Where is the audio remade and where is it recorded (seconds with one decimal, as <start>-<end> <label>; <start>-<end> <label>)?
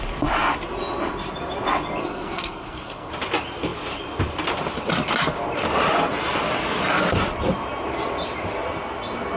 0.0-2.0 recorded; 2.0-3.1 remade; 3.1-9.4 recorded